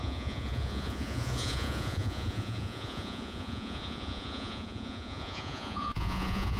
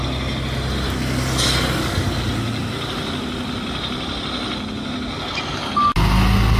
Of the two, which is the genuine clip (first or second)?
second